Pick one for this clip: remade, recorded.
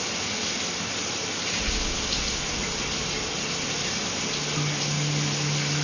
recorded